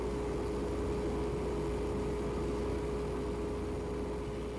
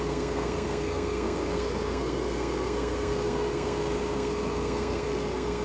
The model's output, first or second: second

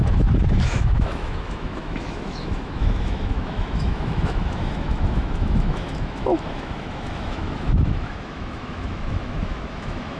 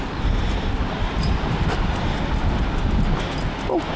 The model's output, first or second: first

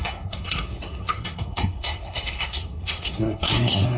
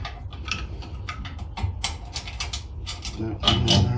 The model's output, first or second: first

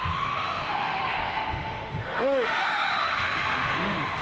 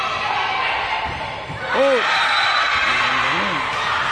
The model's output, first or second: first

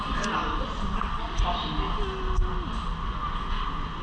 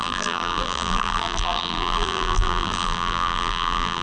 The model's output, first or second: second